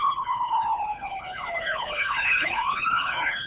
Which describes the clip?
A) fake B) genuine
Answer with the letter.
A